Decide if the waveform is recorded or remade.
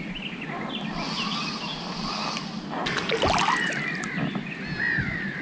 recorded